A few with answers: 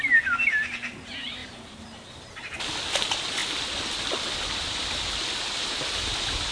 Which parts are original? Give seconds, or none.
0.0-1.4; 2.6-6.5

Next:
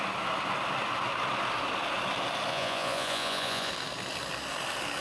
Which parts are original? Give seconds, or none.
0.0-2.5; 3.7-5.0